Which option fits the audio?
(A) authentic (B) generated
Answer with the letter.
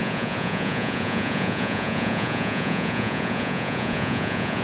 B